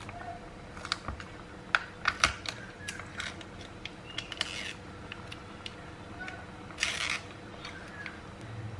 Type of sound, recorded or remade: recorded